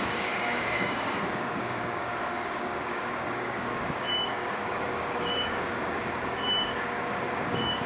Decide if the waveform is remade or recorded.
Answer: remade